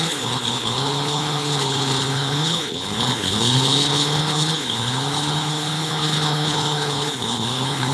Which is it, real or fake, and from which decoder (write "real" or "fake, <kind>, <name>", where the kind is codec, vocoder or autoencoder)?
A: fake, codec, HILCodec